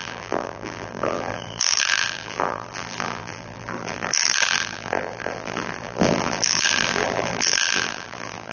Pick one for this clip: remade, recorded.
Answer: remade